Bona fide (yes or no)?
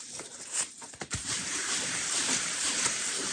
no